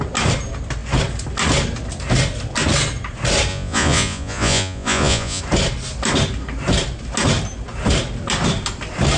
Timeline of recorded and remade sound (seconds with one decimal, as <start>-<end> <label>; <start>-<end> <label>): 0.0-3.5 recorded; 3.5-5.4 remade; 5.4-9.2 recorded